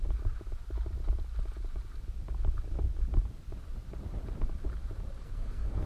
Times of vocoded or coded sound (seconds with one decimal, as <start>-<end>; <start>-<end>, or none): 5.2-5.9